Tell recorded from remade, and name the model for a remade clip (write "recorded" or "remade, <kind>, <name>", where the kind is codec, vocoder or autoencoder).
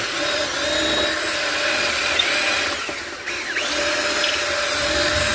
recorded